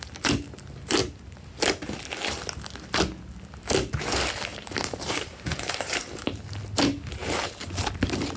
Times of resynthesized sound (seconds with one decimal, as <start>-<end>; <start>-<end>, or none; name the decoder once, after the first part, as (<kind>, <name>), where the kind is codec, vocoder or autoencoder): 4.5-6.3 (vocoder, BigVGAN v2)